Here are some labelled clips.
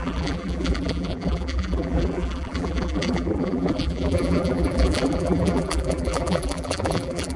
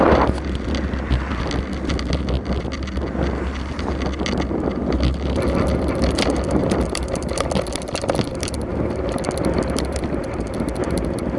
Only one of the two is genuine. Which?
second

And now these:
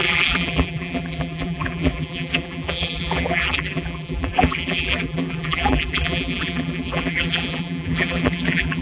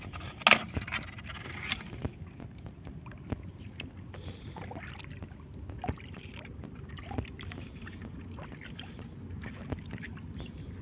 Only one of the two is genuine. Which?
second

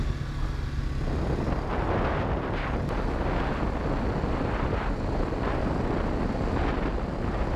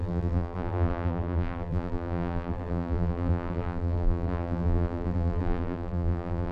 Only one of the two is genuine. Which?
first